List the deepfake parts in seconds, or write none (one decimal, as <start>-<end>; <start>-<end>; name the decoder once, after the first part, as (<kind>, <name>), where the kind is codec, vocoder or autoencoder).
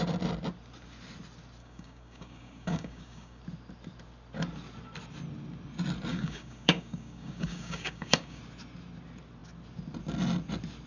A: 1.6-3.4 (codec, DAC); 6.1-8.4